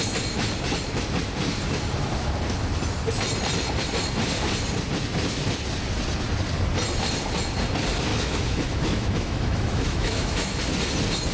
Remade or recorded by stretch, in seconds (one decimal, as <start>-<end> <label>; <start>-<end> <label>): 0.0-8.1 recorded; 8.1-10.6 remade; 10.6-11.3 recorded